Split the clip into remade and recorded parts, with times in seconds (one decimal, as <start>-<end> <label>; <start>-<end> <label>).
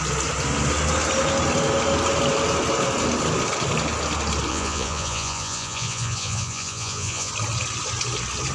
0.0-4.5 recorded; 4.5-7.3 remade; 7.3-8.5 recorded